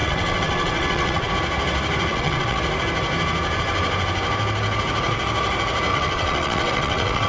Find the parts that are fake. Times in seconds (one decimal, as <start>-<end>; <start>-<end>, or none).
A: 0.0-1.3; 2.1-2.6; 5.9-7.3